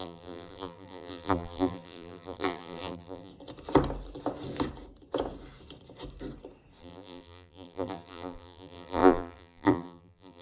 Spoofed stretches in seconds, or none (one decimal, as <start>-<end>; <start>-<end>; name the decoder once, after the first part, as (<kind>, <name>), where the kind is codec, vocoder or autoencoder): 0.0-3.3 (vocoder, BigVGAN v2); 6.8-10.4